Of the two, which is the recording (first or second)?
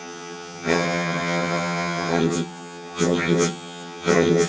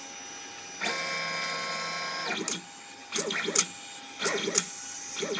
second